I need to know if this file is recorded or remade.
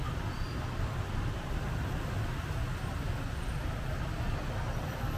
recorded